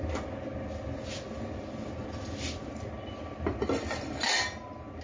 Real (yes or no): yes